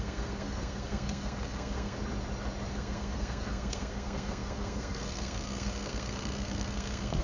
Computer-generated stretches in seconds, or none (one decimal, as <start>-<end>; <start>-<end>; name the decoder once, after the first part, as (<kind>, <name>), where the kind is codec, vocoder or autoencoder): 0.0-2.0 (codec, SNAC); 2.7-7.2